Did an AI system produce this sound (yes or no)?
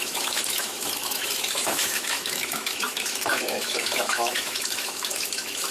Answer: yes